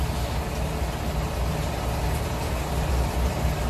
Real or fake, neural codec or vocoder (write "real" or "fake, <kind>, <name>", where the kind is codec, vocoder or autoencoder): real